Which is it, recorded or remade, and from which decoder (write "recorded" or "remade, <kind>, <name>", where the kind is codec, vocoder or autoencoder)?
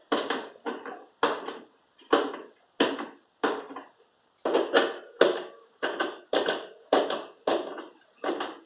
recorded